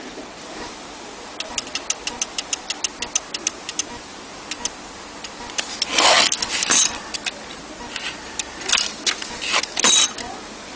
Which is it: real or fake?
real